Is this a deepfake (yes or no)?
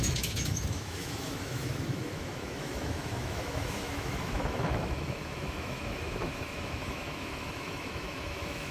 yes